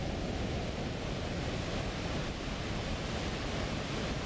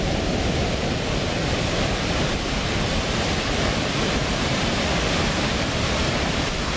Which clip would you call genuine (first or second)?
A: first